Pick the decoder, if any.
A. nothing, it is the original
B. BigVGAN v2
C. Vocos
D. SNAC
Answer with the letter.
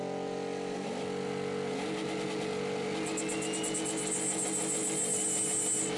A